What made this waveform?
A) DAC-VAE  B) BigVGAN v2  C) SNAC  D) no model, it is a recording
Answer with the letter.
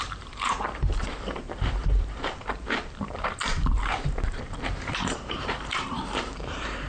B